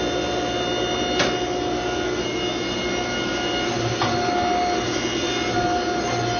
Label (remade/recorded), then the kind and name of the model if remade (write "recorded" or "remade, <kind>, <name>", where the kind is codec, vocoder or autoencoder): recorded